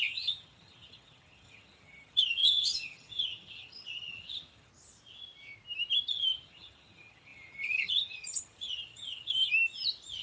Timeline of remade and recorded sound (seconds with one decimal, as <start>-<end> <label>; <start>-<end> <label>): 0.0-4.7 remade; 4.7-6.1 recorded; 6.1-9.5 remade; 9.5-10.2 recorded